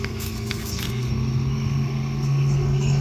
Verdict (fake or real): fake